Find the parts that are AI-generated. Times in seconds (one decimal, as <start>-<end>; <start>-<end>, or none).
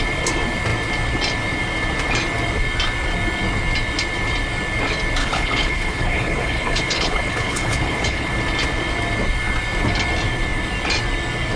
5.2-8.3